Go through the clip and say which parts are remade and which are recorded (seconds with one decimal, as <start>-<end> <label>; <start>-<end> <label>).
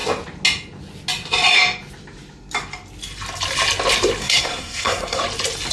0.0-4.2 recorded; 4.2-5.2 remade; 5.2-5.7 recorded